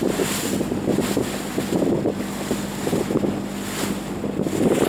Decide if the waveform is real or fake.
real